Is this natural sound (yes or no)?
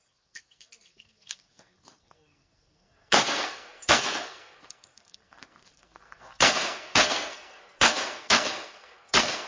no